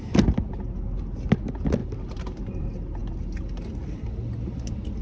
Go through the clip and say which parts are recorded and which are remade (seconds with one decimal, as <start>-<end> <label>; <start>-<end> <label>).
0.0-5.0 recorded